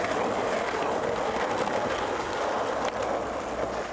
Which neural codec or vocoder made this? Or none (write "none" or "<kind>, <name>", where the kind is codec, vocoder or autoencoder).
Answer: none